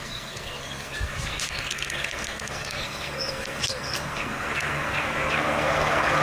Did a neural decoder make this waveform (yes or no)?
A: yes